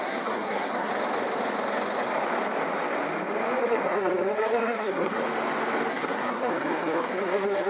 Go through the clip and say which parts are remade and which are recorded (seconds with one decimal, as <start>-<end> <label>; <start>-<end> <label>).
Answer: 0.0-0.9 remade; 0.9-3.6 recorded; 3.6-5.2 remade; 5.2-5.9 recorded; 5.9-7.7 remade